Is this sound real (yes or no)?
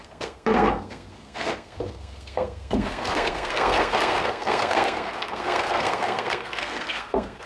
no